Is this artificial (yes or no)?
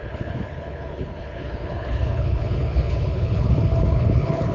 yes